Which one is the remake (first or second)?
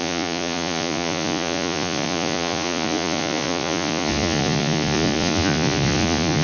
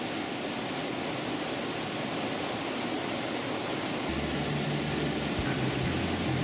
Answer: first